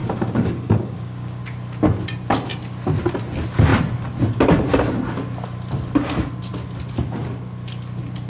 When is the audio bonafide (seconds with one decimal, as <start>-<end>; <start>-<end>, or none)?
1.4-8.3